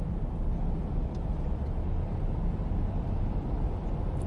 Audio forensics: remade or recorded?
recorded